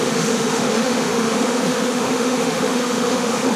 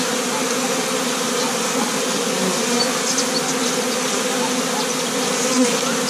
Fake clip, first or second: first